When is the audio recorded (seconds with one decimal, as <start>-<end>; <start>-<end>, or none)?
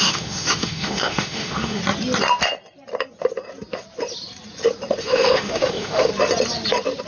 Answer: 1.8-5.0; 6.1-7.1